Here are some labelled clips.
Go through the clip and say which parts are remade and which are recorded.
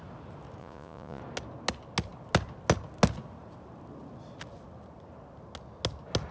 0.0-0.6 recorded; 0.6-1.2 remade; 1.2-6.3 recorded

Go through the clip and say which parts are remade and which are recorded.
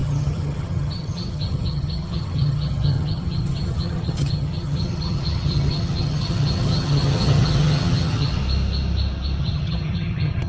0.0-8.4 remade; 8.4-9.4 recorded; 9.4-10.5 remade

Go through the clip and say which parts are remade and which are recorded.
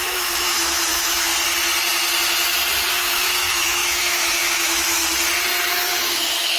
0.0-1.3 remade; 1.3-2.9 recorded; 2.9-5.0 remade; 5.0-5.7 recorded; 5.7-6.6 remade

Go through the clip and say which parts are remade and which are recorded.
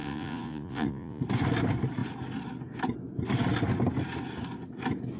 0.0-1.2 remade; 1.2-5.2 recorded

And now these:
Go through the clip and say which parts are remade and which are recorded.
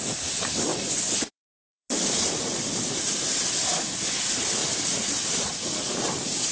0.0-0.7 recorded; 0.7-1.9 remade; 1.9-6.5 recorded